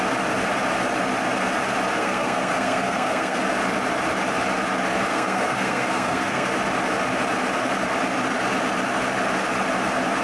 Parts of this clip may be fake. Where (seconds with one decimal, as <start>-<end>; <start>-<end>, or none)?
2.0-3.4; 5.1-6.5